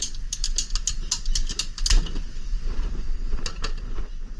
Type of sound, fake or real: real